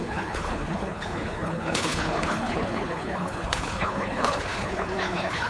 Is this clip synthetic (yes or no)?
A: yes